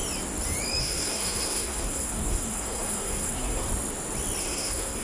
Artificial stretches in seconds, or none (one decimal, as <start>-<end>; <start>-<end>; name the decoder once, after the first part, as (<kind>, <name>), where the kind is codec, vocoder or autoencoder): 0.8-3.7 (codec, SNAC); 4.4-5.0